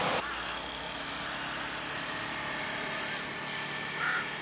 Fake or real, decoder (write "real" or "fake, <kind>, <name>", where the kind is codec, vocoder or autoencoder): real